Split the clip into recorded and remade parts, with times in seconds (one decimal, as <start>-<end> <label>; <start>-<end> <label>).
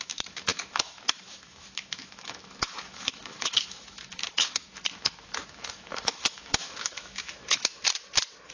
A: 0.0-7.9 remade; 7.9-8.5 recorded